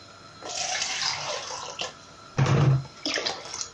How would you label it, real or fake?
real